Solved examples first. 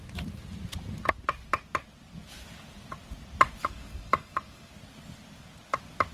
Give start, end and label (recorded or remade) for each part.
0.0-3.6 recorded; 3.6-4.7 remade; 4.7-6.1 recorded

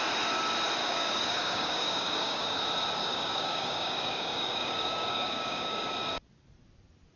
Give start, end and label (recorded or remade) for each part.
0.0-0.8 recorded; 0.8-2.6 remade; 2.6-3.0 recorded; 3.0-5.9 remade; 5.9-7.2 recorded

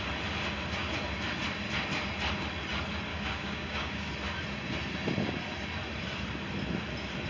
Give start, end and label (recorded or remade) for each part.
0.0-3.1 recorded; 3.1-4.1 remade; 4.1-7.3 recorded

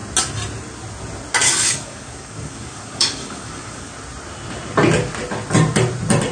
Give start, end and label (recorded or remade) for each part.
0.0-1.4 recorded; 1.4-3.9 remade; 3.9-6.3 recorded

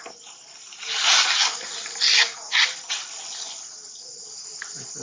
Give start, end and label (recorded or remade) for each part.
0.0-5.0 recorded

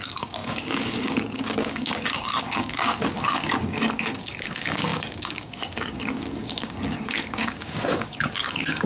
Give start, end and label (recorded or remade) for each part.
0.0-8.9 remade

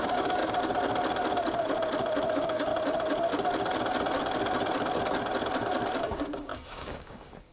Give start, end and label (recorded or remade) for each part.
0.0-0.4 remade; 0.4-2.3 recorded; 2.3-2.7 remade; 2.7-6.0 recorded; 6.0-7.5 remade

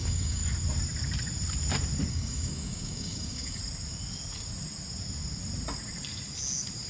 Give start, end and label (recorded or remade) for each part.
0.0-0.4 remade; 0.4-2.1 recorded; 2.1-3.6 remade; 3.6-6.9 recorded